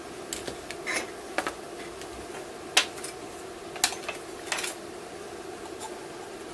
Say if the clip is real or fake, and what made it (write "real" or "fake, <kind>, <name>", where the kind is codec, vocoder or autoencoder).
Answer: real